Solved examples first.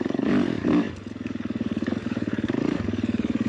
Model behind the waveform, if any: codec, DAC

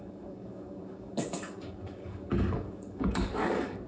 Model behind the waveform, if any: codec, DAC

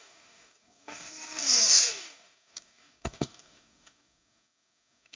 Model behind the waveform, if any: codec, DAC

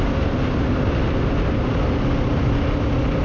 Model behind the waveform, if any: none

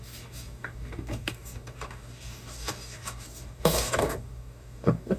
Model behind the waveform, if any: codec, DAC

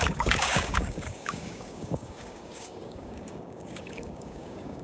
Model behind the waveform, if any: codec, DAC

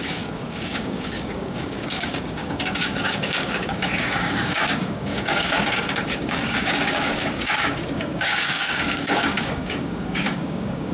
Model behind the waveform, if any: codec, DAC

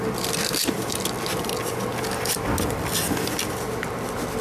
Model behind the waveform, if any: none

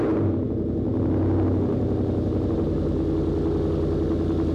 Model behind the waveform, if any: none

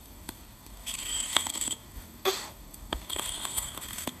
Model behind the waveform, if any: codec, DAC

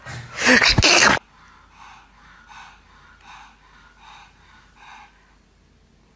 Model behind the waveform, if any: none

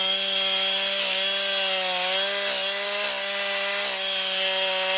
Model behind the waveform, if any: none